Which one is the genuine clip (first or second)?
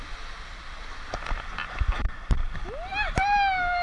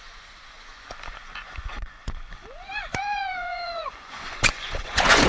first